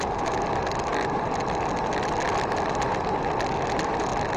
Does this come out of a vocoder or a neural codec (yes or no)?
no